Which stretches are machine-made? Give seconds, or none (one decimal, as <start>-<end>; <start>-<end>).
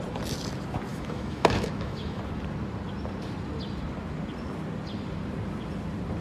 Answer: 0.9-2.2